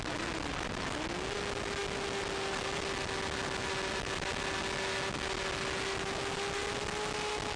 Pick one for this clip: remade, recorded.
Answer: recorded